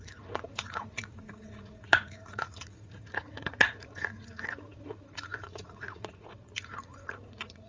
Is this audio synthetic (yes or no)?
yes